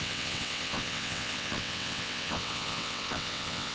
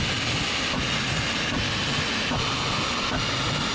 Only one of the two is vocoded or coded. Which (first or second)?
first